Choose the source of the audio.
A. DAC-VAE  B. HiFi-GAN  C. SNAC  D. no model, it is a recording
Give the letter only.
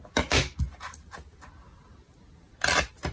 D